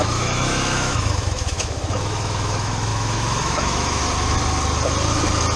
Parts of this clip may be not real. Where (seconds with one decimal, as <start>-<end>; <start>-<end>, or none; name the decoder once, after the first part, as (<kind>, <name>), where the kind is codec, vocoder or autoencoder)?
0.0-4.0 (autoencoder, DAC-VAE)